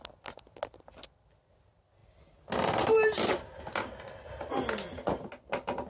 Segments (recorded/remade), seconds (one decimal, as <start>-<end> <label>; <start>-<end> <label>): 0.0-5.9 recorded